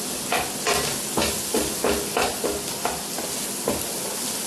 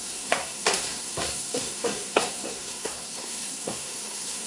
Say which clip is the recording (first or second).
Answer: first